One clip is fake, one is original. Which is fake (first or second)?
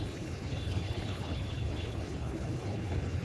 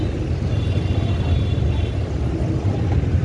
first